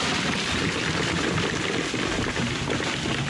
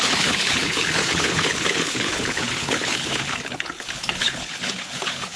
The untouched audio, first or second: first